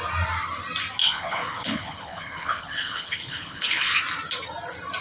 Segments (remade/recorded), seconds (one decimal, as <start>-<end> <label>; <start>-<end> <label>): 0.0-1.0 recorded; 1.0-4.0 remade; 4.0-5.0 recorded